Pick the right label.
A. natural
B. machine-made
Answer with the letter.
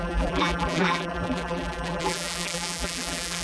B